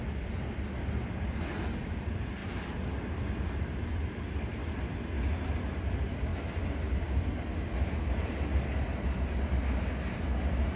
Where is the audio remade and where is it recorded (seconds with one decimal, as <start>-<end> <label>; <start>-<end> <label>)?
0.0-10.8 recorded